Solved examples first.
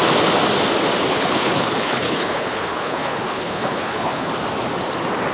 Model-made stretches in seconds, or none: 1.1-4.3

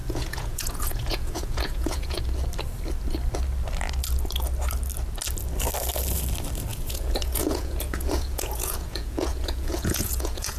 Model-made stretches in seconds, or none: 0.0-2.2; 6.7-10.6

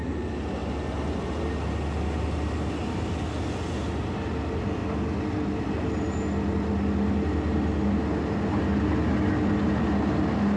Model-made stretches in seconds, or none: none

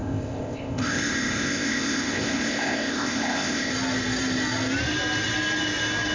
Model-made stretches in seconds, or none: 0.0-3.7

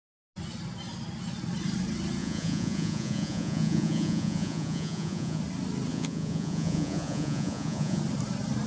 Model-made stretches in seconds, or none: 2.2-5.4; 5.9-8.0

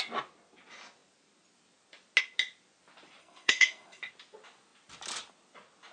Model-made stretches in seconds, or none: 3.2-4.0